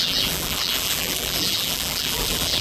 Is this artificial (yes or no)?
yes